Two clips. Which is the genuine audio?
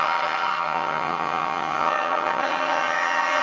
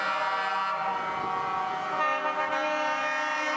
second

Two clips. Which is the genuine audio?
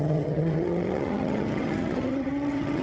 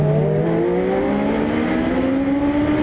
second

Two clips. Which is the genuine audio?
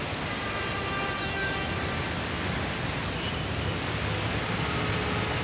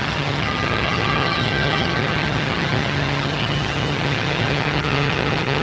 first